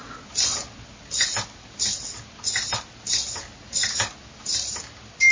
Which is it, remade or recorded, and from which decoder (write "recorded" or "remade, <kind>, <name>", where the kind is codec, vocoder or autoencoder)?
recorded